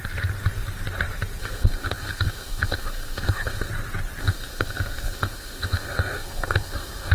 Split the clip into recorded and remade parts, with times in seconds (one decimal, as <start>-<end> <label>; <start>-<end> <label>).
0.0-1.4 recorded; 1.4-3.7 remade; 3.7-4.2 recorded; 4.2-7.1 remade

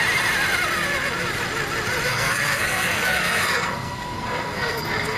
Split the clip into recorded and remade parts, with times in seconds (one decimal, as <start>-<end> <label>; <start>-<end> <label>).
0.0-2.1 recorded; 2.1-5.2 remade